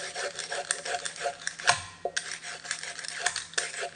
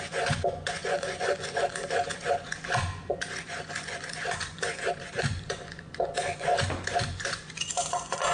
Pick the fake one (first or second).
second